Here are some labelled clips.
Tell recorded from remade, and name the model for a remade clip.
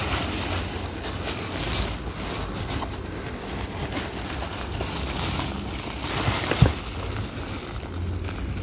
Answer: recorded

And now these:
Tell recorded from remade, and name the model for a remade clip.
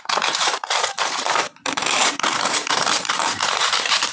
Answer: remade, vocoder, BigVGAN v2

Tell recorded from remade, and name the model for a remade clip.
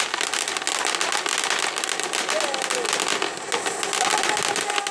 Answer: recorded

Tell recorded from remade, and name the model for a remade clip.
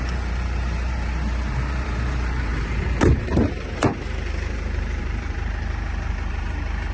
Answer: remade, vocoder, BigVGAN v2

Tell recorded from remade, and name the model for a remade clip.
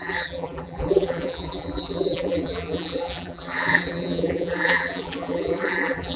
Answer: remade, vocoder, BigVGAN v2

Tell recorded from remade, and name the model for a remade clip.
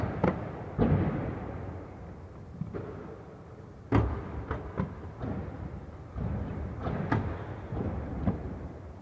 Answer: recorded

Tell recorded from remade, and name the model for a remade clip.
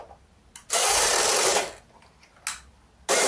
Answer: recorded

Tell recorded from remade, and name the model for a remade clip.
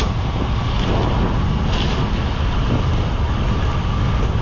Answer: recorded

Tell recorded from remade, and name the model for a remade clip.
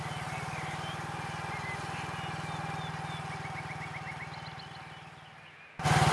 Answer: recorded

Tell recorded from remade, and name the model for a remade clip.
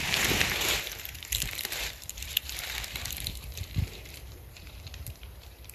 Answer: remade, vocoder, BigVGAN v2